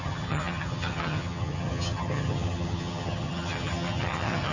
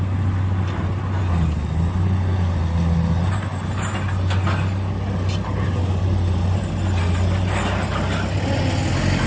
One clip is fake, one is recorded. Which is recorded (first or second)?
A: second